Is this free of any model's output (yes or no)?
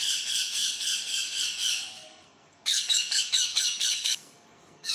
no